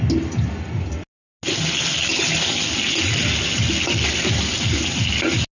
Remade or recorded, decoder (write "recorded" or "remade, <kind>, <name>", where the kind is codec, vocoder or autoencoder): recorded